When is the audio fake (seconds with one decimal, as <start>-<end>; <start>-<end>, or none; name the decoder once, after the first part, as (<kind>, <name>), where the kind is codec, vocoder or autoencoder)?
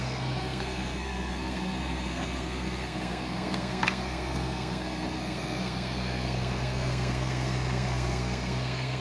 0.0-9.0 (codec, SNAC)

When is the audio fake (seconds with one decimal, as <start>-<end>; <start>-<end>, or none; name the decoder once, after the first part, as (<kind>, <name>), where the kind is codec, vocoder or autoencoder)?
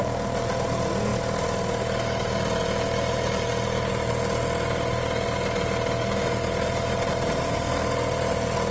none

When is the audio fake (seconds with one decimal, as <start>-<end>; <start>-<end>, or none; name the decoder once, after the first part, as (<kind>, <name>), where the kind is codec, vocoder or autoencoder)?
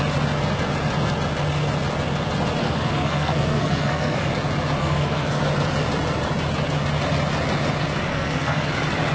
2.6-4.3 (codec, SNAC); 4.8-5.4; 8.1-8.7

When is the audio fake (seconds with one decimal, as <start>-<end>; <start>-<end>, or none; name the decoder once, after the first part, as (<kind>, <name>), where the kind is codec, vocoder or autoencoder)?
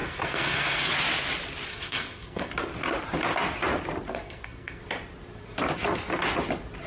0.0-0.9 (codec, SNAC); 1.7-2.5; 4.1-4.8